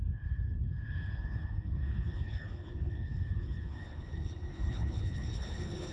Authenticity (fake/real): fake